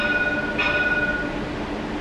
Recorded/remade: recorded